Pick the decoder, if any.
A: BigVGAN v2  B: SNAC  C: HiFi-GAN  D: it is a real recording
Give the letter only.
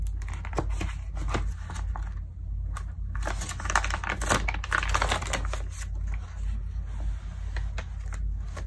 D